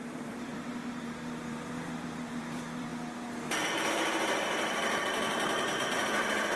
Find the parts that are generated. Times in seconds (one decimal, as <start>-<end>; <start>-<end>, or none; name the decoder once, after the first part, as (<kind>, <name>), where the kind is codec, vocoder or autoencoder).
0.0-0.5 (vocoder, BigVGAN v2); 1.0-2.9; 5.6-6.6